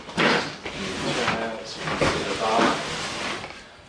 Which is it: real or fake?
real